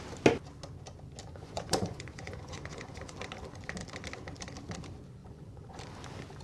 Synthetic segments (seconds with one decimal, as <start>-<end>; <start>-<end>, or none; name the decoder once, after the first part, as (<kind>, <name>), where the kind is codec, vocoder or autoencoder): 1.2-3.1 (vocoder, Vocos); 5.2-5.8